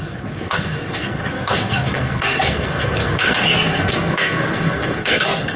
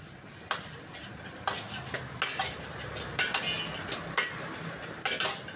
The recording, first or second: second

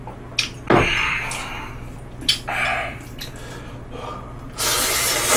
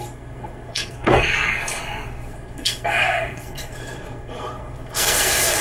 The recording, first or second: first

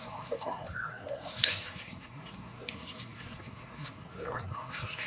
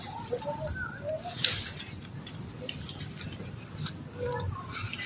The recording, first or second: second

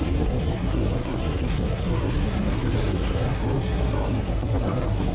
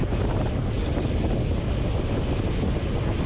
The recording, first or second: second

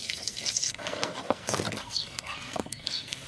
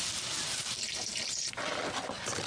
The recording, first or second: second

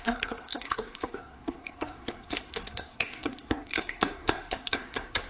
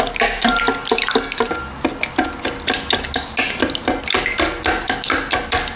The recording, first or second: second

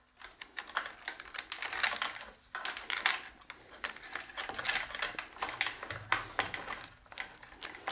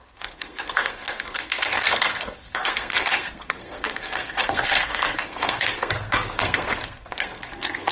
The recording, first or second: first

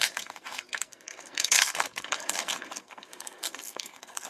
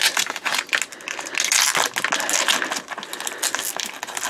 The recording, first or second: second